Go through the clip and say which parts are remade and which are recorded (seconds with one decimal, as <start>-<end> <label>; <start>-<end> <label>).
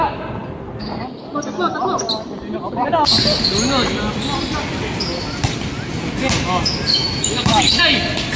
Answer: 0.0-6.9 recorded; 6.9-7.8 remade; 7.8-8.4 recorded